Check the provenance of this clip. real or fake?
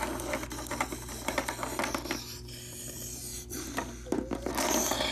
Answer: real